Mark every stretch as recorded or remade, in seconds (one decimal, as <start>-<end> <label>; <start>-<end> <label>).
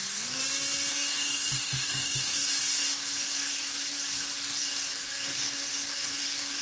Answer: 0.0-0.4 remade; 0.4-0.9 recorded; 0.9-6.6 remade